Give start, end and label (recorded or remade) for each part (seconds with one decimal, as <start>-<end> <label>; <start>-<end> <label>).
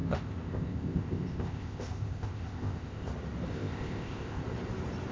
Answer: 0.0-3.1 remade; 3.1-3.5 recorded; 3.5-4.4 remade; 4.4-5.1 recorded